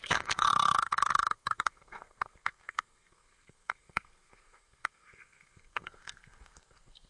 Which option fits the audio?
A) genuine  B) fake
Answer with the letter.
B